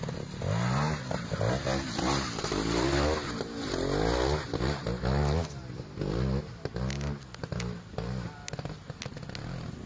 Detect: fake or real real